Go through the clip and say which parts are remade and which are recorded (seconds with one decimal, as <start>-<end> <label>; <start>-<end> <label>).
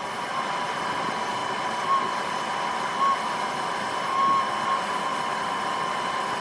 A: 0.0-6.4 recorded